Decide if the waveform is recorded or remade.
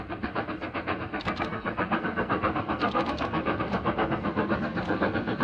remade